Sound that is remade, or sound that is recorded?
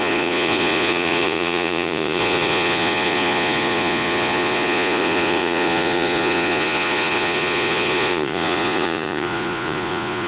remade